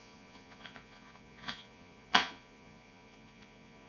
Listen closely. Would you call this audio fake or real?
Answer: fake